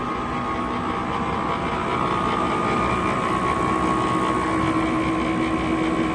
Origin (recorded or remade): recorded